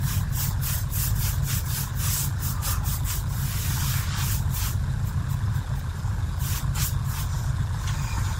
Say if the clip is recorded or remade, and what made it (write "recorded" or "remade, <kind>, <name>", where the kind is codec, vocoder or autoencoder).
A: recorded